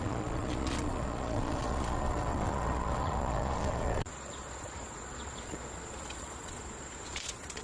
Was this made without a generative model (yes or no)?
no